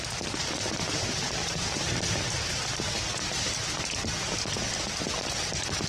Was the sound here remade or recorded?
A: recorded